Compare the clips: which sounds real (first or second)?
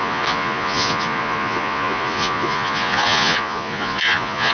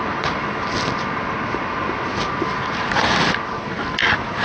second